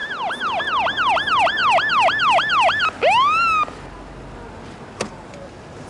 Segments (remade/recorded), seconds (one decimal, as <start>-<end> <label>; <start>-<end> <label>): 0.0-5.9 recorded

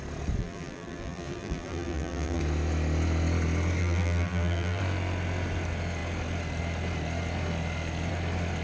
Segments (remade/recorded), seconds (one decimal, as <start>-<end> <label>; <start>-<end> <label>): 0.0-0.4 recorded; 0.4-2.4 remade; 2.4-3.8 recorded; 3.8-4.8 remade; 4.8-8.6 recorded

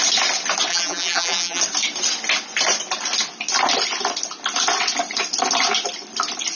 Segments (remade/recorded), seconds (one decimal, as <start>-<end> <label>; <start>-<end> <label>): 0.0-0.7 recorded; 0.7-1.6 remade; 1.6-6.6 recorded